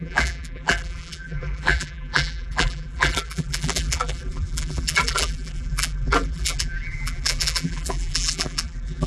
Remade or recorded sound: remade